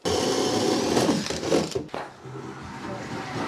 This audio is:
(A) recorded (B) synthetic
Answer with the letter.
A